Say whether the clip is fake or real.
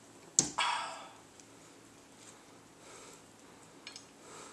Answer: real